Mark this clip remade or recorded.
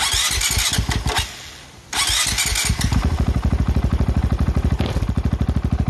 recorded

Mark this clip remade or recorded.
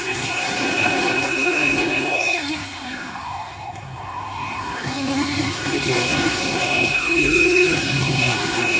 remade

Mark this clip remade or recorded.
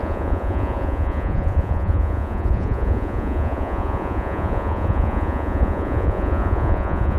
remade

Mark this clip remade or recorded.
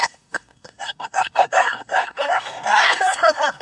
remade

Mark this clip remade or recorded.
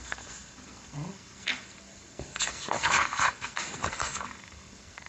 remade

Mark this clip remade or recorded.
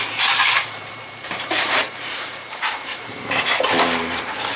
remade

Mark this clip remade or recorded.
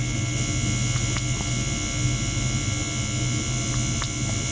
recorded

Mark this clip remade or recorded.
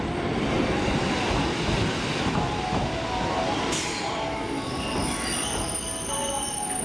recorded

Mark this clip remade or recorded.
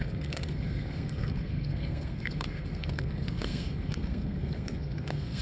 remade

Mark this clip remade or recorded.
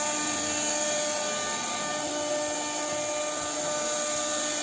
recorded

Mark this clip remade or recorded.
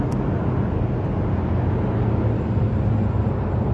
recorded